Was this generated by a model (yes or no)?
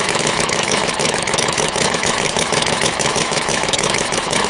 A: yes